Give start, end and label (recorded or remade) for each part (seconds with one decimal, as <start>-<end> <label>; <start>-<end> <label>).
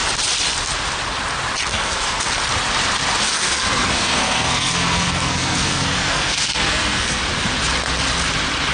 0.0-1.7 recorded; 1.7-2.2 remade; 2.2-3.3 recorded; 3.3-7.2 remade; 7.2-8.7 recorded